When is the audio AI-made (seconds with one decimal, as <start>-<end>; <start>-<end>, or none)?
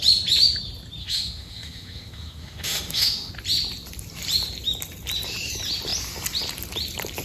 1.0-3.3